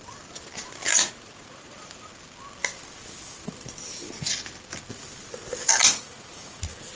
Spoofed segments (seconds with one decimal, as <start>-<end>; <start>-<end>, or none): 0.9-2.1; 5.8-6.6